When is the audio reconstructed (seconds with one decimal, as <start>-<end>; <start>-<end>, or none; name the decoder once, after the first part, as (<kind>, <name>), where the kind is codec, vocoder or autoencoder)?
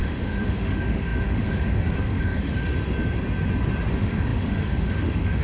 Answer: 0.0-2.7 (autoencoder, DAC-VAE); 3.9-5.4